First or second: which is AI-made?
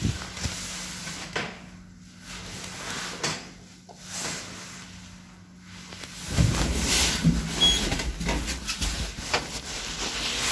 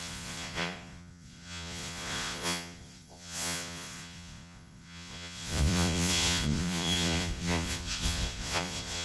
second